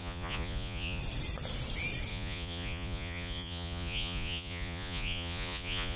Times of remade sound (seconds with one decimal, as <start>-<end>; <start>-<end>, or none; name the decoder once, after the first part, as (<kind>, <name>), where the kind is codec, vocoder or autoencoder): 0.0-1.0 (vocoder, Vocos); 2.1-6.0